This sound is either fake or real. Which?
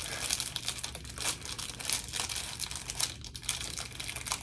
real